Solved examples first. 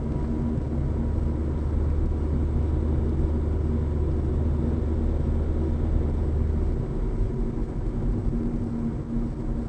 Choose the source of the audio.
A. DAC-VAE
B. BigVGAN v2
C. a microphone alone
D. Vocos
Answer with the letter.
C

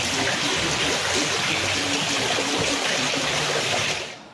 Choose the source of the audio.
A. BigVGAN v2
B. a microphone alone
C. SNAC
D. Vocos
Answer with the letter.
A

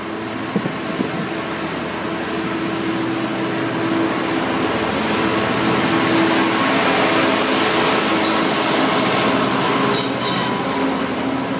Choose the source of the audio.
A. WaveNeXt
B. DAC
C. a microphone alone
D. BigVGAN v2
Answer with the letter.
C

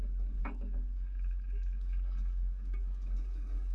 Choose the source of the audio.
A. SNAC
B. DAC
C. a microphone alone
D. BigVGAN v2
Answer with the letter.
B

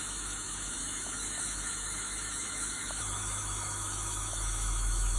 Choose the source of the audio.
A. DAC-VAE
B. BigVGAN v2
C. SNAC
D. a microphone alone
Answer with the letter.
A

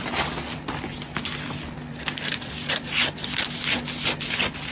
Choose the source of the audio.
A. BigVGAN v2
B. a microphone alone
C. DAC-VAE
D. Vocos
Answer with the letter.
B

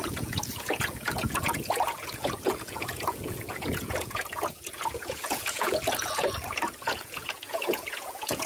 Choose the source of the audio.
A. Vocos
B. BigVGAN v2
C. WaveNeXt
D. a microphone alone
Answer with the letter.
A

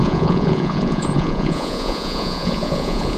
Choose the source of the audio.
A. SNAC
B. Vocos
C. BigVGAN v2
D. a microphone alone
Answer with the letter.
B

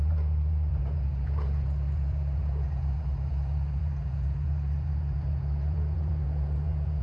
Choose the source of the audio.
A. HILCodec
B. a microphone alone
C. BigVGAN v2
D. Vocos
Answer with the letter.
D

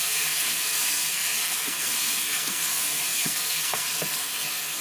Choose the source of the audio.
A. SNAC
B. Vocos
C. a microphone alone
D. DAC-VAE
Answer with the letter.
A